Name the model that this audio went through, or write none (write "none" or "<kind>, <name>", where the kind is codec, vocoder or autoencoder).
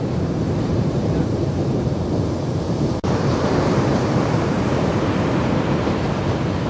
vocoder, BigVGAN v2